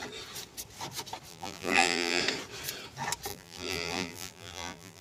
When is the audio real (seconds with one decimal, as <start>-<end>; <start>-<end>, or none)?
0.0-1.3; 2.2-3.3

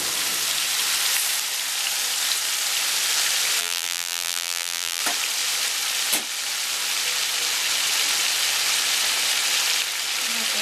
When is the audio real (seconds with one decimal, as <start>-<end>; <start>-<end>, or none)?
0.0-3.6; 5.0-10.6

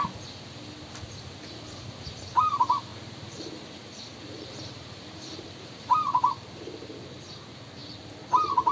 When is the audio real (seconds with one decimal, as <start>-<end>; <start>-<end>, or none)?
0.0-2.9; 3.5-4.1; 7.2-8.7

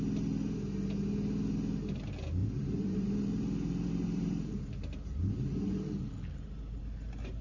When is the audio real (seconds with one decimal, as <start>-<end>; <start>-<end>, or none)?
0.0-2.4; 6.8-7.4

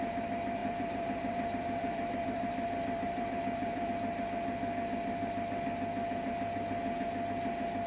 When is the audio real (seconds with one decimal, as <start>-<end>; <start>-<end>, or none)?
0.0-0.6; 3.9-7.9

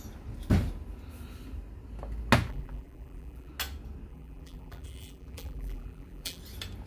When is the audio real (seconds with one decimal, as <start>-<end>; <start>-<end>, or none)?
0.0-2.5; 3.5-4.1; 6.4-6.9

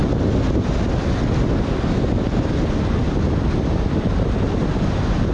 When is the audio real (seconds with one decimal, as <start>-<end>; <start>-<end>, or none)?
0.0-3.0